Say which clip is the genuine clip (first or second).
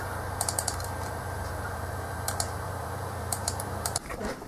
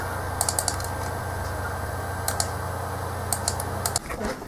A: second